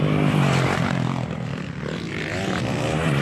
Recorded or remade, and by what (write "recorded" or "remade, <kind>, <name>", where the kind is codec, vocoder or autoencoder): recorded